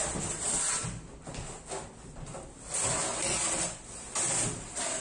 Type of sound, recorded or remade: recorded